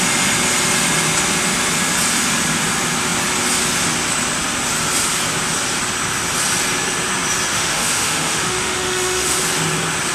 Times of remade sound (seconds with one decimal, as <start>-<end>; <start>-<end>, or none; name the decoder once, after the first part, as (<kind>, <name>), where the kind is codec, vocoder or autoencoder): 7.5-9.4 (autoencoder, DAC-VAE)